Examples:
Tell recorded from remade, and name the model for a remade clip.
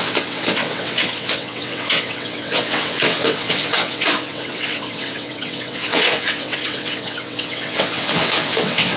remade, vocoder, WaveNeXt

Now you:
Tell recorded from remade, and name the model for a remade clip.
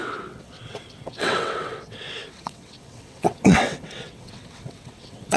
remade, vocoder, WaveNeXt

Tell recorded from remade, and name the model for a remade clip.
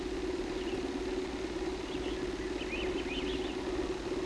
recorded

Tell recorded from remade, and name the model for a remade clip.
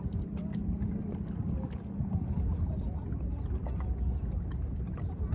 recorded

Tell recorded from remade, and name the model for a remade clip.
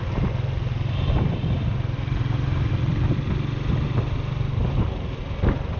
recorded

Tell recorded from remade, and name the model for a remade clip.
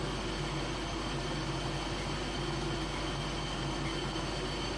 recorded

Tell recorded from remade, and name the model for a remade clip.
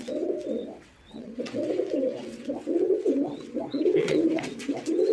remade, vocoder, WaveNeXt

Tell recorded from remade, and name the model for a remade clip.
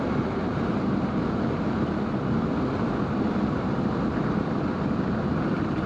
recorded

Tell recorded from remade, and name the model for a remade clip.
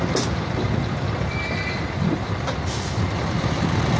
recorded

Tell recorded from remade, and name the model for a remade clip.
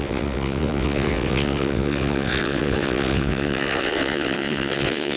remade, vocoder, WaveNeXt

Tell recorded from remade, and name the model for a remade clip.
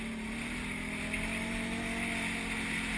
recorded